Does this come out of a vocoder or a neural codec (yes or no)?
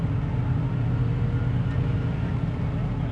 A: no